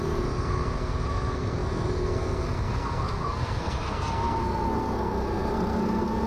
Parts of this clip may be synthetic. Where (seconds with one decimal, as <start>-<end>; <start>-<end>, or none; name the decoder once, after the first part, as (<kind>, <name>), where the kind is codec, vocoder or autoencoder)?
0.0-6.3 (codec, SNAC)